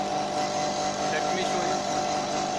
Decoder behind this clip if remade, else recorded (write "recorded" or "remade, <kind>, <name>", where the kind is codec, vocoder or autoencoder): recorded